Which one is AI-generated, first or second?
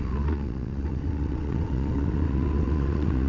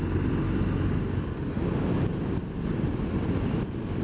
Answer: first